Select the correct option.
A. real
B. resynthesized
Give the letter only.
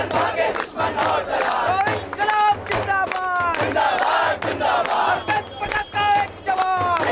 A